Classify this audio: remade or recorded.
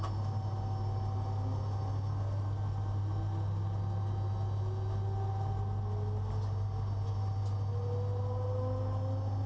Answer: recorded